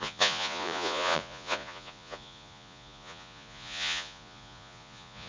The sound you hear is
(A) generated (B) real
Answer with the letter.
A